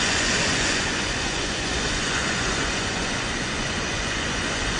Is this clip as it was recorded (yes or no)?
no